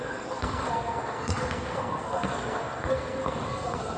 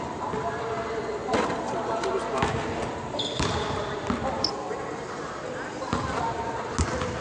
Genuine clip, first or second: second